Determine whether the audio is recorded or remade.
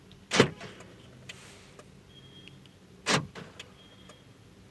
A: recorded